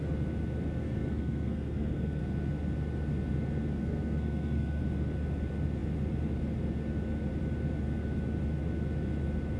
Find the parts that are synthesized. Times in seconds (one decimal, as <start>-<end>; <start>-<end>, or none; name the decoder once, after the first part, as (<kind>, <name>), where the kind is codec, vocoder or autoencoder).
0.8-2.2 (codec, SNAC); 3.8-4.8